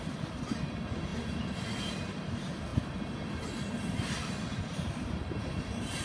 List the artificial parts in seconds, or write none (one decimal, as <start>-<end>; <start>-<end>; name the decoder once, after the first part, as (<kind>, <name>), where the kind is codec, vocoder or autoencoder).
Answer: 0.0-2.7 (vocoder, BigVGAN v2); 5.4-6.0